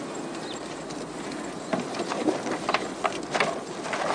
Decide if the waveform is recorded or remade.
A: recorded